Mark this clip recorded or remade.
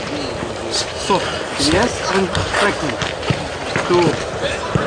recorded